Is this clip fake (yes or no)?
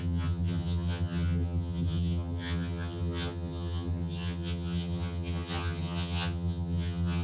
yes